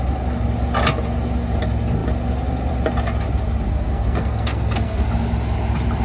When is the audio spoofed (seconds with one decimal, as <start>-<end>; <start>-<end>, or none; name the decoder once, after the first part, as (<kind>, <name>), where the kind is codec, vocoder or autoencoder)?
3.7-5.1 (codec, SNAC)